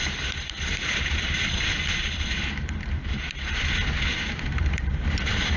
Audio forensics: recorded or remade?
remade